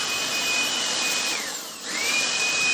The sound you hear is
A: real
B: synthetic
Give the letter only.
B